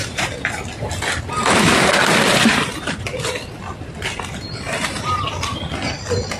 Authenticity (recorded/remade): recorded